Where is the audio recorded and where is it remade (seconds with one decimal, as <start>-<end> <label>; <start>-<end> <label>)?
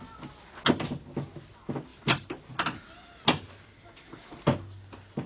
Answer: 0.0-5.3 recorded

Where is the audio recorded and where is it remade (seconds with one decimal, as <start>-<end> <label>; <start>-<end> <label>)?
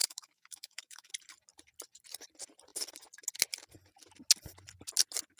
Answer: 0.0-1.1 remade; 1.1-5.4 recorded